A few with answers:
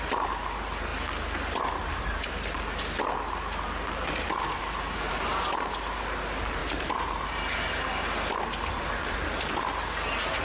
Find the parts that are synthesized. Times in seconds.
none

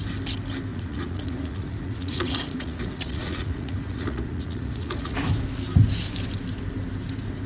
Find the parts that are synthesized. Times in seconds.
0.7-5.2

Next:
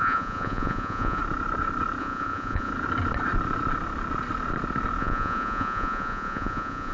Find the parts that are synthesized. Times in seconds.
0.0-1.2; 2.0-2.7; 5.0-6.9

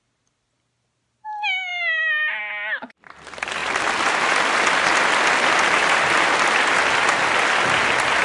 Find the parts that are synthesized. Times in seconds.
none

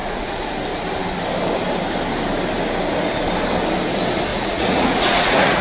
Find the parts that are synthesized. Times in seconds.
0.0-0.5; 4.3-5.6